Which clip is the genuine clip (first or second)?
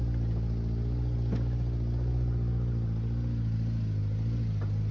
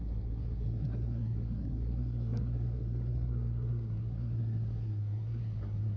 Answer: first